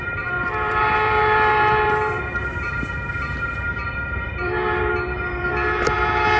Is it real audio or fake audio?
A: fake